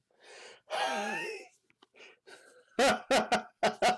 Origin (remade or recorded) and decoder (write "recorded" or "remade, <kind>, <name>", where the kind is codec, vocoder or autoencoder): recorded